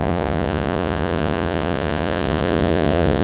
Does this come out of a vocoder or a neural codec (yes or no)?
yes